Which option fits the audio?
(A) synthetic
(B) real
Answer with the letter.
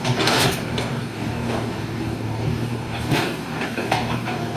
A